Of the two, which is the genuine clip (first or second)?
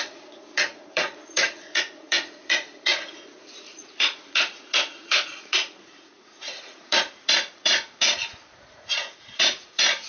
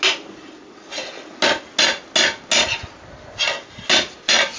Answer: second